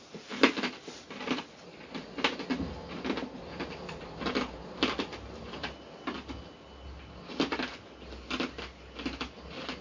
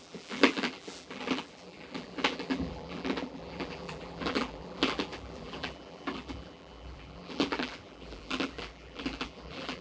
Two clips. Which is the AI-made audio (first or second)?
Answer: second